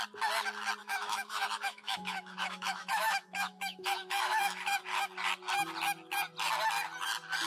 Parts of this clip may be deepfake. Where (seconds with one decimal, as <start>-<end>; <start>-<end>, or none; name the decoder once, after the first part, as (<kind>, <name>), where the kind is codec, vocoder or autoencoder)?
0.8-4.8 (autoencoder, DAC-VAE)